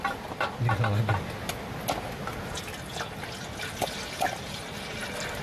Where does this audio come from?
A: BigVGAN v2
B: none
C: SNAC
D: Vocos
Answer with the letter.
B